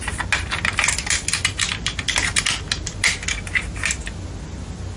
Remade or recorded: recorded